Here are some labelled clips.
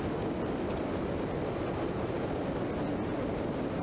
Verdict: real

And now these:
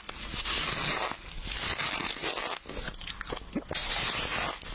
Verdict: real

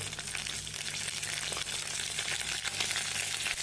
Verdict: real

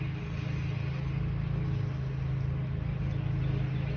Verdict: real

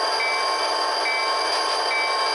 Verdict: real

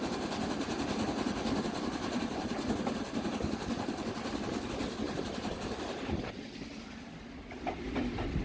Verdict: real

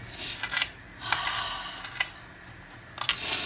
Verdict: real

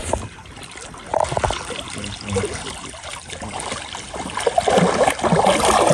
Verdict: real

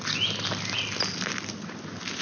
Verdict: real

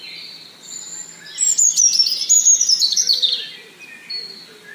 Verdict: real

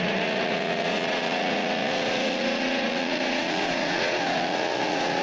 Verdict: fake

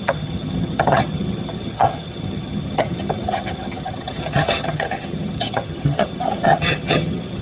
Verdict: fake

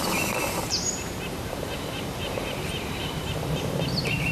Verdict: fake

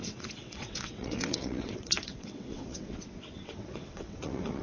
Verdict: fake